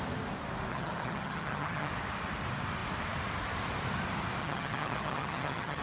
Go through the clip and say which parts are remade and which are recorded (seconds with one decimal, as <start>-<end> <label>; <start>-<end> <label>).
0.0-0.7 recorded; 0.7-1.9 remade; 1.9-4.4 recorded; 4.4-5.8 remade